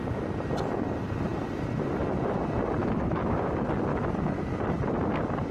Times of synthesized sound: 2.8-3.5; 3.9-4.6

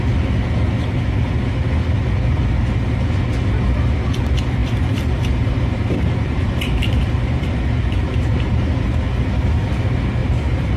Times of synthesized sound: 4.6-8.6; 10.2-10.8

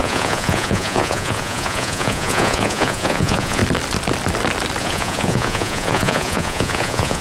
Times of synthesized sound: 0.0-3.6; 4.8-7.2

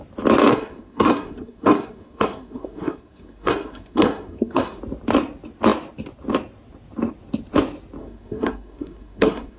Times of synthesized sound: 0.5-4.8; 8.0-9.6

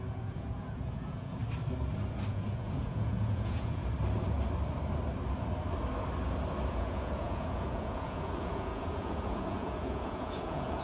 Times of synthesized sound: 0.0-1.4; 2.3-3.8; 6.7-10.8

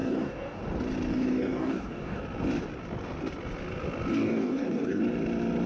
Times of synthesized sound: 0.0-0.6; 1.1-2.2; 4.1-5.0